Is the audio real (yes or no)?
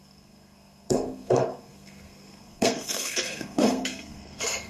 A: no